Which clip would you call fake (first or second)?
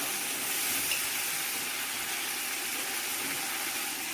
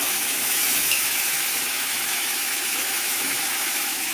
second